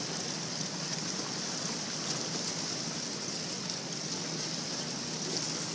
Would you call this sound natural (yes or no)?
yes